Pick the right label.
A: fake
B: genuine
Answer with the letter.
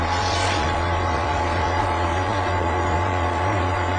A